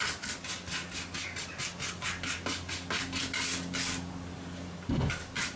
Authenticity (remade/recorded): recorded